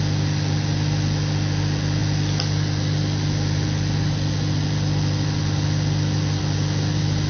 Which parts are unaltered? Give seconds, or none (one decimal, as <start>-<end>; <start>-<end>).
0.0-7.3